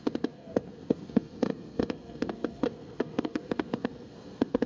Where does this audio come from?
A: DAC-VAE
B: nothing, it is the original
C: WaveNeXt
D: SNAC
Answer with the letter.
D